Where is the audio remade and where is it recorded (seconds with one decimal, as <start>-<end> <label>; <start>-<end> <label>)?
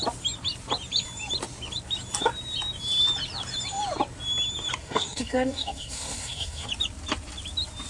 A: 0.0-4.8 recorded; 4.8-6.7 remade; 6.7-7.9 recorded